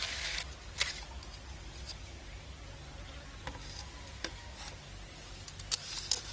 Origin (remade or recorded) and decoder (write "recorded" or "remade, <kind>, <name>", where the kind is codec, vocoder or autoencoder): recorded